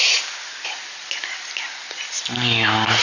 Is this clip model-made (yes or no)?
no